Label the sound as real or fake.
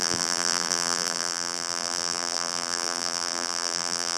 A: fake